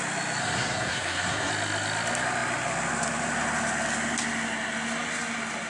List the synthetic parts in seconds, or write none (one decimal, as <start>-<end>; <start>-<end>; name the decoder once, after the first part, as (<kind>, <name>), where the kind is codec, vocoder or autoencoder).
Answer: 0.4-1.5 (codec, SNAC)